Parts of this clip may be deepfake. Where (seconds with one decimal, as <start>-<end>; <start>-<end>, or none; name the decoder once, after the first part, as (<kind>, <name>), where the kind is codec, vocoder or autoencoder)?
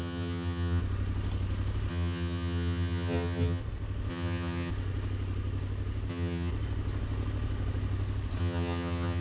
0.0-0.8 (vocoder, HiFi-GAN); 1.9-3.6; 4.1-4.7; 6.1-6.5; 8.4-9.2